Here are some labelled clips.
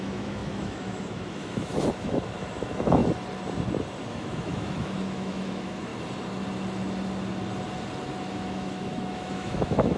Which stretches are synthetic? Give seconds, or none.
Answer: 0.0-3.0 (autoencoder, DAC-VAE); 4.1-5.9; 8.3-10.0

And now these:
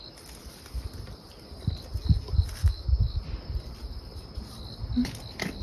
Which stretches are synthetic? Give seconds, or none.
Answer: 2.6-3.2 (autoencoder, DAC-VAE)

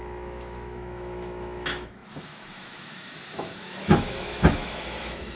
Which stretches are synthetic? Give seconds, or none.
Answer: 0.0-5.4 (autoencoder, DAC-VAE)

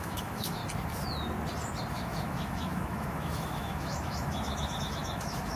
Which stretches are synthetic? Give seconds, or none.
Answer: 0.0-0.6 (autoencoder, DAC-VAE); 1.9-5.6